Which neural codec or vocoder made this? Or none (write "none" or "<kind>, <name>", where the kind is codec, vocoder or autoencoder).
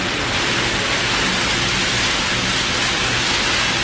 none